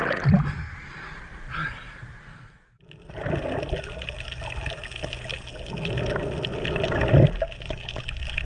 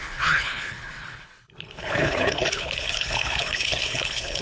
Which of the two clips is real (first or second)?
first